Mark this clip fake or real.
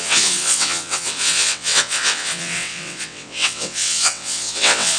fake